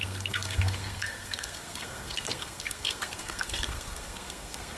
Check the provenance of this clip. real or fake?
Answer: fake